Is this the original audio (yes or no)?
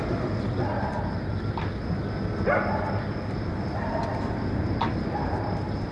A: yes